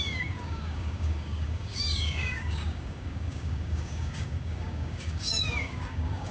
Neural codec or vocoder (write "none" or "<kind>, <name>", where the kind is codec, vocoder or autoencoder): codec, DAC